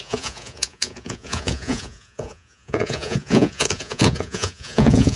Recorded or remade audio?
remade